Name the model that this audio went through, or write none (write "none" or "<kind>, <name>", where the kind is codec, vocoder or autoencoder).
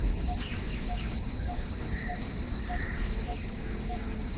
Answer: codec, DAC